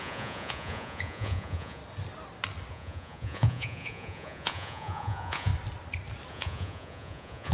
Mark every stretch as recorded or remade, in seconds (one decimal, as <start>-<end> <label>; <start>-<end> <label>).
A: 0.0-1.8 remade; 1.8-2.7 recorded; 2.7-5.5 remade; 5.5-6.3 recorded; 6.3-7.5 remade

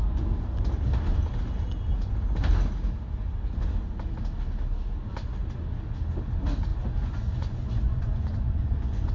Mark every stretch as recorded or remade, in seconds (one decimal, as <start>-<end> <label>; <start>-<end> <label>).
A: 0.0-6.7 recorded; 6.7-9.1 remade

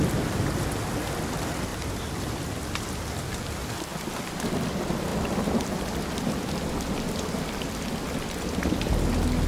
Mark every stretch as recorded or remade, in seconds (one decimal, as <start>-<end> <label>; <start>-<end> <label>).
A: 0.0-0.7 remade; 0.7-1.7 recorded; 1.7-3.3 remade; 3.3-5.1 recorded; 5.1-7.8 remade; 7.8-9.5 recorded

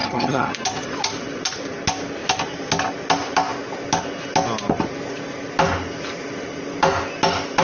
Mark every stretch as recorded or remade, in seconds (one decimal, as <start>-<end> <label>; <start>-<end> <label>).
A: 0.0-0.5 remade; 0.5-7.6 recorded

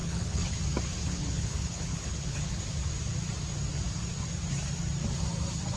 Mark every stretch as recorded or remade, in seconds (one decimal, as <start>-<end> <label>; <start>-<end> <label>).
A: 0.0-0.6 remade; 0.6-1.0 recorded; 1.0-2.6 remade; 2.6-5.8 recorded

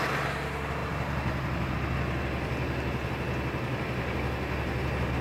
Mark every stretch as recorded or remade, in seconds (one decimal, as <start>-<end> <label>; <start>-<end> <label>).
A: 0.0-5.2 recorded

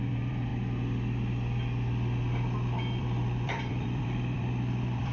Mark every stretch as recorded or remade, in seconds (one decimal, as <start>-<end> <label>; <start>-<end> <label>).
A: 0.0-0.5 remade; 0.5-3.0 recorded; 3.0-5.1 remade